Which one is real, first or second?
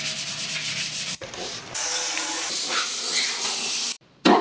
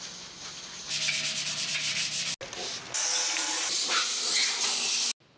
second